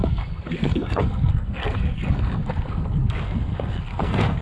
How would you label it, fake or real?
fake